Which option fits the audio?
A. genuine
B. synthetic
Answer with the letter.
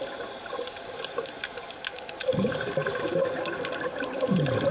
A